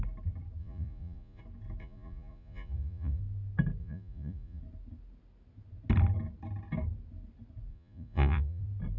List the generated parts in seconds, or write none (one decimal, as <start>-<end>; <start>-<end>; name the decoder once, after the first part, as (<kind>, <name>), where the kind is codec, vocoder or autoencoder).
0.6-1.4 (vocoder, Vocos); 1.8-3.2; 3.8-4.6; 7.7-8.6